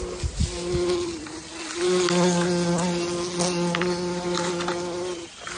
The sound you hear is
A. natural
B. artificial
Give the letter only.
A